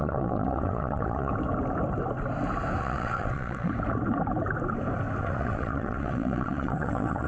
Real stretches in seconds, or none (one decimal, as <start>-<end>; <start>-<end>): 1.3-2.8; 3.7-5.2